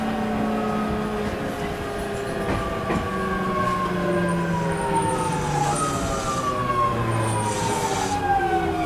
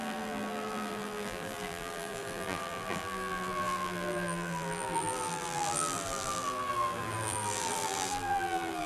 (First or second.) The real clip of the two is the first